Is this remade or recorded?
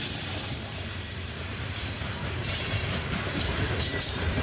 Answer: remade